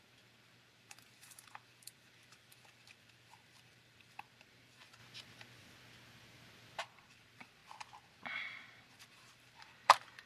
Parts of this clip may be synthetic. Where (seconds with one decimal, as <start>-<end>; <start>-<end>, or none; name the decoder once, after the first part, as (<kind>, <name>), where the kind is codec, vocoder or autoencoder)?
0.0-5.0 (vocoder, BigVGAN v2); 6.8-7.6; 8.8-10.3